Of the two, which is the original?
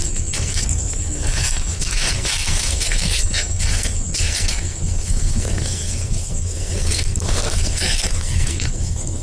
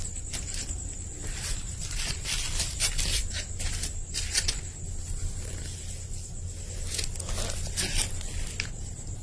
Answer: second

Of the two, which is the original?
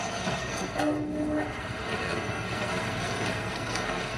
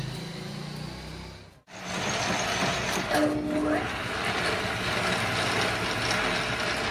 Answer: second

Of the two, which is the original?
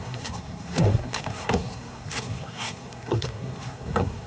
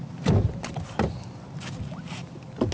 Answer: second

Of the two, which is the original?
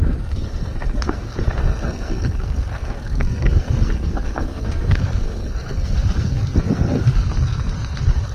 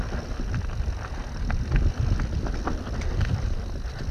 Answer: second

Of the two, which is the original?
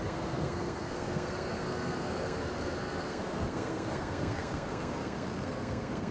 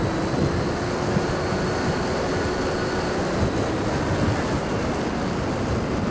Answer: second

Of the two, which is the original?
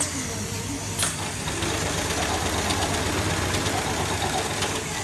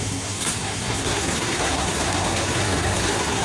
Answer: first